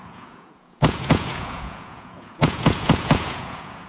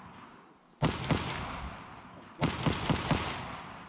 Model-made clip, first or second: first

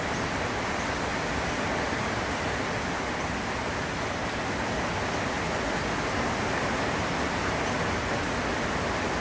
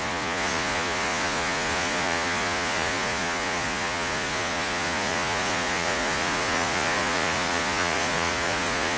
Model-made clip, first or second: second